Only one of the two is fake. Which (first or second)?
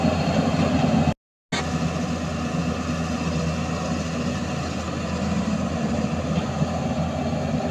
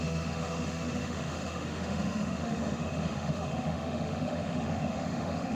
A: second